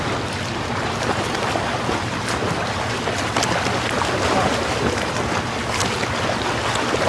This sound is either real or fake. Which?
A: real